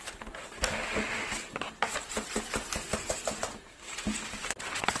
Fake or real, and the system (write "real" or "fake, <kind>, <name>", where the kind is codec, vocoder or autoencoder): real